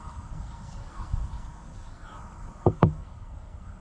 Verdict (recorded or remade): remade